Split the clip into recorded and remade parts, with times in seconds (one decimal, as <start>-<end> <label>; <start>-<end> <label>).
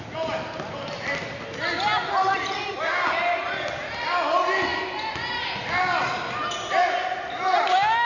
0.0-2.2 recorded; 2.2-4.0 remade; 4.0-8.0 recorded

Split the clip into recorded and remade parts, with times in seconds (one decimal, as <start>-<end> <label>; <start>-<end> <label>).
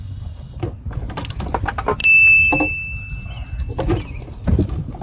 0.0-5.0 remade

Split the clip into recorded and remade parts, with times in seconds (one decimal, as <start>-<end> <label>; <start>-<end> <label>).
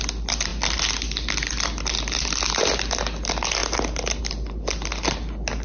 0.0-5.6 recorded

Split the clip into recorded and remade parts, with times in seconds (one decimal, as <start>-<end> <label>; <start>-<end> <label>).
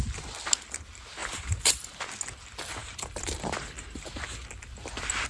0.0-1.2 recorded; 1.2-2.0 remade; 2.0-2.8 recorded; 2.8-4.2 remade; 4.2-5.3 recorded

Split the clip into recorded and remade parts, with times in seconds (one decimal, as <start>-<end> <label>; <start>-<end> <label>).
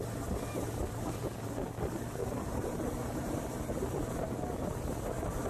0.0-2.2 recorded; 2.2-3.4 remade; 3.4-5.5 recorded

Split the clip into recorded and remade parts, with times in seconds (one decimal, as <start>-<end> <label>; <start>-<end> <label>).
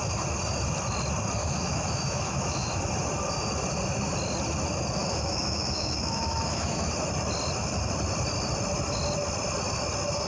0.0-1.4 recorded; 1.4-2.8 remade; 2.8-5.0 recorded; 5.0-6.9 remade; 6.9-10.3 recorded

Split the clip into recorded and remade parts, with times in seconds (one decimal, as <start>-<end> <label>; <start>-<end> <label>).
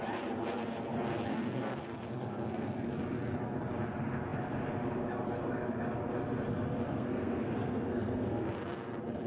0.0-1.3 recorded; 1.3-2.8 remade; 2.8-6.9 recorded; 6.9-8.6 remade; 8.6-9.3 recorded